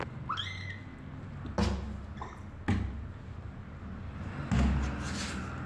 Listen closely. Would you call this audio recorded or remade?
recorded